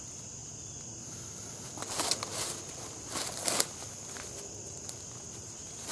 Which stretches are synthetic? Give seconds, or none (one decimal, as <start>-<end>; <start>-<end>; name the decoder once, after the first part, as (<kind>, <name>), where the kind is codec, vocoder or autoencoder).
none